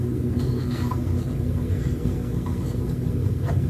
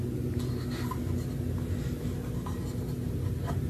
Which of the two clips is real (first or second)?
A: second